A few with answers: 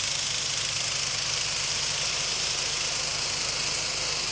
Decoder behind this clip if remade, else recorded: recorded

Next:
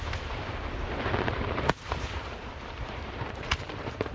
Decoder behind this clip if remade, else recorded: remade, vocoder, BigVGAN v2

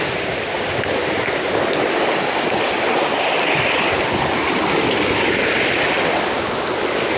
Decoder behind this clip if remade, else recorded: recorded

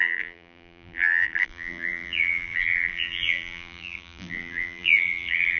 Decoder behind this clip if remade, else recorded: remade, vocoder, BigVGAN v2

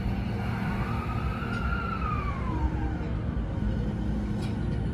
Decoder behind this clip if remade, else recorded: recorded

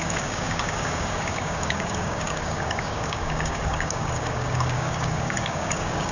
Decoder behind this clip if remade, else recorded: remade, codec, DAC